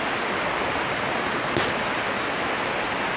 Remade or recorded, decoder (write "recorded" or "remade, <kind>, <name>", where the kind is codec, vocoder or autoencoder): recorded